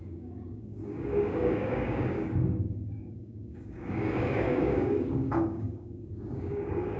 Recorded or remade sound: remade